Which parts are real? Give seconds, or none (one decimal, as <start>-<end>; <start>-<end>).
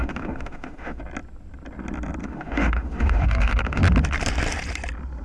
1.0-2.2; 3.8-5.2